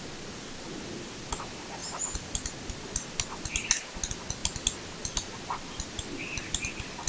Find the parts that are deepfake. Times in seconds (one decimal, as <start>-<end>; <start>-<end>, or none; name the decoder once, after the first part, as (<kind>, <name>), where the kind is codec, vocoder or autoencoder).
none